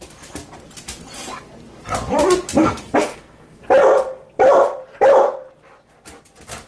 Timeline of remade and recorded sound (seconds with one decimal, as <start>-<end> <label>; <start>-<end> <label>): 0.0-2.6 recorded; 2.6-3.6 remade; 3.6-6.7 recorded